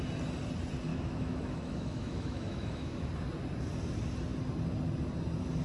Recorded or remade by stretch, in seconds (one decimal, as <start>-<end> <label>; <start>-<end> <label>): 0.0-0.9 recorded; 0.9-3.1 remade; 3.1-5.6 recorded